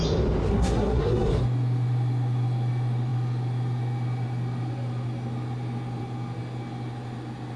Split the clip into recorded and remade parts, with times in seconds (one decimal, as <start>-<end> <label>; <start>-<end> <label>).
0.0-0.5 recorded; 0.5-1.3 remade; 1.3-7.6 recorded